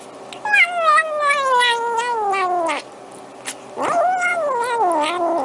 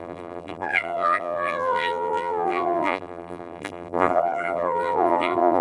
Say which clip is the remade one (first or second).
second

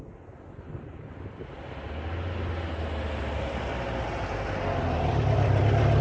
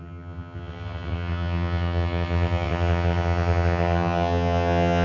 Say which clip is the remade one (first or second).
second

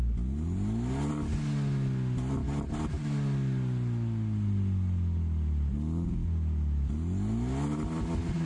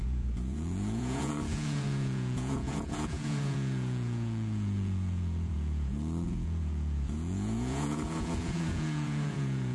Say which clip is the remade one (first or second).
second